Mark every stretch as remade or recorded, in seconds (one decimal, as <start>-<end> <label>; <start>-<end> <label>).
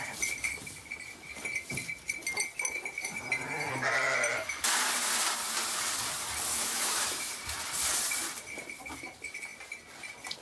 0.0-6.5 recorded; 6.5-7.3 remade; 7.3-10.4 recorded